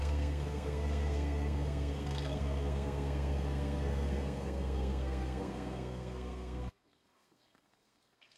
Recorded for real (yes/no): no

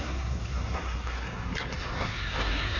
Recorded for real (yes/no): no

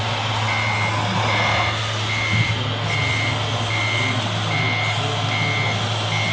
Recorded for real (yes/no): yes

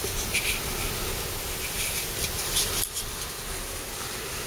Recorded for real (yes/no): yes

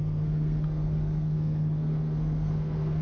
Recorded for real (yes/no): no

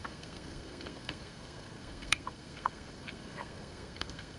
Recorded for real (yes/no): no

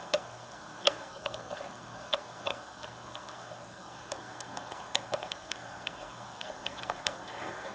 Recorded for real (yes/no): no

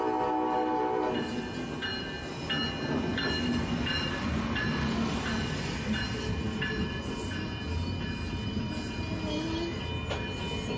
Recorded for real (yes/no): yes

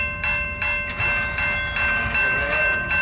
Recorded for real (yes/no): yes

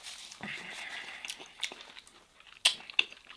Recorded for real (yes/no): yes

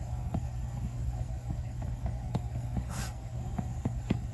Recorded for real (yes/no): no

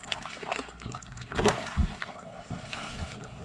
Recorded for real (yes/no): no